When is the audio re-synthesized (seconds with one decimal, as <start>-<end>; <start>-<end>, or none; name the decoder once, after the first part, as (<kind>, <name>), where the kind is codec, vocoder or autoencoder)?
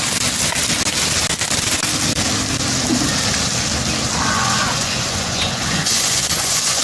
4.2-6.8 (vocoder, Vocos)